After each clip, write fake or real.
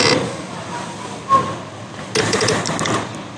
real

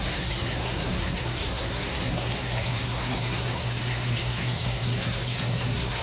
fake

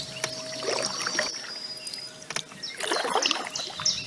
real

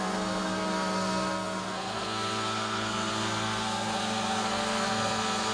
fake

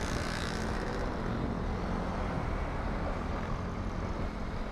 real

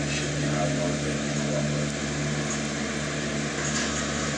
real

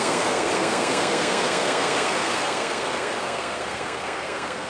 fake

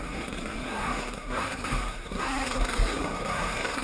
fake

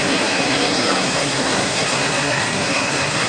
fake